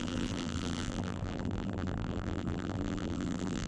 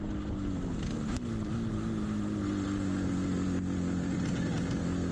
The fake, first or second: first